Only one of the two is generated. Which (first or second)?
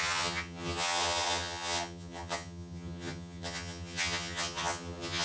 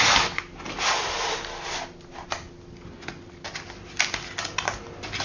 first